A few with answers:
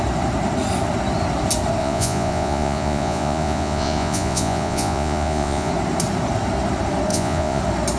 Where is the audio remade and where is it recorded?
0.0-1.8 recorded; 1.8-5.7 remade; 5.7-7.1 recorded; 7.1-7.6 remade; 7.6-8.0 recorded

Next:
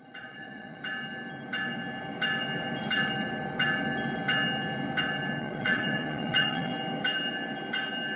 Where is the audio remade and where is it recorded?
0.0-0.8 remade; 0.8-5.4 recorded; 5.4-6.7 remade; 6.7-8.2 recorded

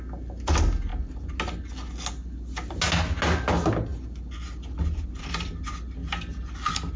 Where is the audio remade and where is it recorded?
0.0-6.0 recorded; 6.0-7.0 remade

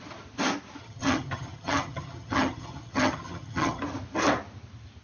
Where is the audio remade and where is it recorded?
0.0-0.8 recorded; 0.8-3.8 remade; 3.8-5.0 recorded